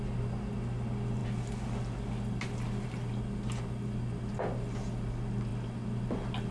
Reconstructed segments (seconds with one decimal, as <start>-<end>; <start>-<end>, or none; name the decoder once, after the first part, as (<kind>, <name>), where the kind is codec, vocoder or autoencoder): none